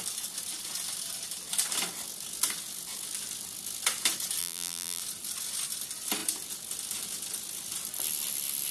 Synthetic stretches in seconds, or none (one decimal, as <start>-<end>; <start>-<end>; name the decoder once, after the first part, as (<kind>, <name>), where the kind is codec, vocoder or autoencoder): 4.4-5.0 (vocoder, BigVGAN v2)

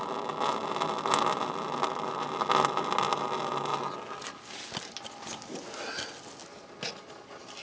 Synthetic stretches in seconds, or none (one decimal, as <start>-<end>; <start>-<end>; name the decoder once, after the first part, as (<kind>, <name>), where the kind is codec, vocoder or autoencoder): none

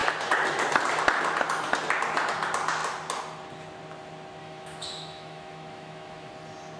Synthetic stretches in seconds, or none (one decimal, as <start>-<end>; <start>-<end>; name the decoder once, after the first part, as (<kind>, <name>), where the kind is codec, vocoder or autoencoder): 4.4-6.3 (autoencoder, DAC-VAE)